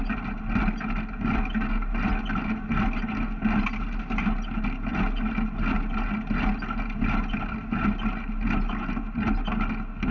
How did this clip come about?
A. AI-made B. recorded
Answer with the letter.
B